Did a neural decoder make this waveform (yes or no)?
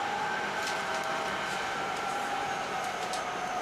yes